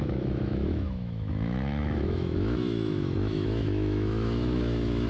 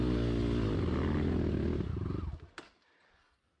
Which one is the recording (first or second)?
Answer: second